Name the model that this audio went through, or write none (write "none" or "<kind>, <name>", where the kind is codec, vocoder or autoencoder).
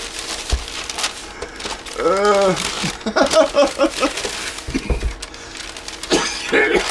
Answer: none